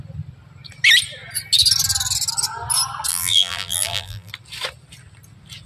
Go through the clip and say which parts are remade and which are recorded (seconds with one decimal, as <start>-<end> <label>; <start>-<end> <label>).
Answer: 0.0-3.1 recorded; 3.1-4.3 remade; 4.3-5.7 recorded